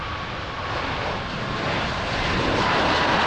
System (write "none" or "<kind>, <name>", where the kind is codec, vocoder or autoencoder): none